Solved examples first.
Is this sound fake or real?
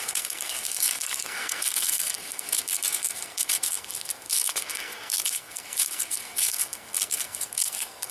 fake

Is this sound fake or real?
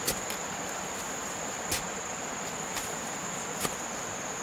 real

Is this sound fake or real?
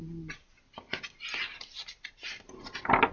real